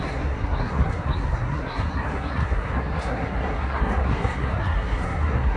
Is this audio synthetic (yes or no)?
yes